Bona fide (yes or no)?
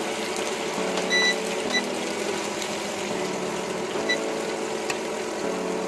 yes